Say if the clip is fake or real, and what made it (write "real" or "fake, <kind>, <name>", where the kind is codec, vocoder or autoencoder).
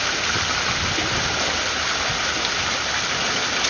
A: real